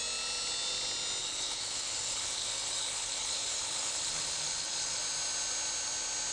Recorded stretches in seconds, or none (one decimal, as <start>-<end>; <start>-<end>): 0.0-1.2; 5.0-6.3